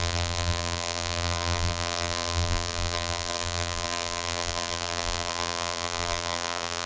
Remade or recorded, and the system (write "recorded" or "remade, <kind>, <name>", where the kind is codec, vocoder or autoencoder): remade, vocoder, BigVGAN v2